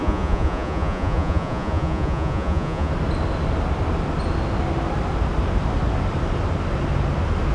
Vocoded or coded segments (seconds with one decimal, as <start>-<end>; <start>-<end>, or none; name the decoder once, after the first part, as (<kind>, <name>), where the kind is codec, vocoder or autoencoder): 0.0-2.9 (vocoder, Vocos)